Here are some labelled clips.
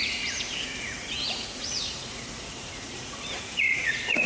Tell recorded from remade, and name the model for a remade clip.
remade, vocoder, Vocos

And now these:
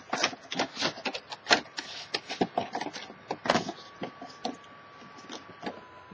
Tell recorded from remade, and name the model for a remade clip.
recorded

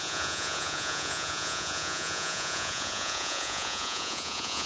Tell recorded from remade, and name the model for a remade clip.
remade, vocoder, Vocos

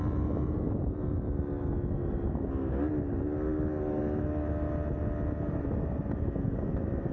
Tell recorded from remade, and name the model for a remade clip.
recorded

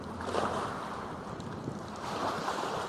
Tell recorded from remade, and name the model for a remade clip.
recorded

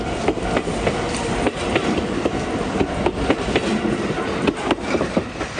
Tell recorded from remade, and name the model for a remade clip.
recorded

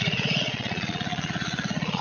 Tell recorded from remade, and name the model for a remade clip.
remade, vocoder, Vocos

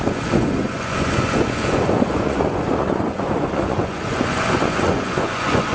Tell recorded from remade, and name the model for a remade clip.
remade, vocoder, Vocos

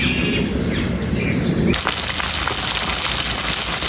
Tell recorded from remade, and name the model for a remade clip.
recorded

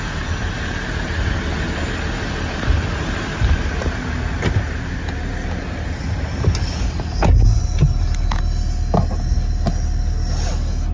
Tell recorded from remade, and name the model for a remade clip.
recorded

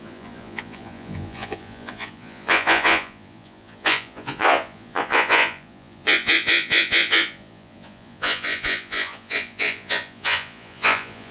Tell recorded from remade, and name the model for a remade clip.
remade, vocoder, Vocos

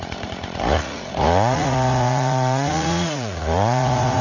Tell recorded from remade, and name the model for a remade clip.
remade, vocoder, Vocos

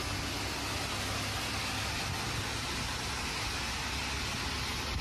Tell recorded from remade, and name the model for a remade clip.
recorded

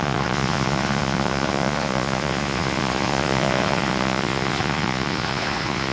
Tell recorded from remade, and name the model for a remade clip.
remade, vocoder, Vocos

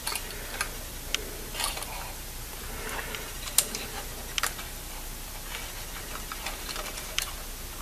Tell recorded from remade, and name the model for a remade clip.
recorded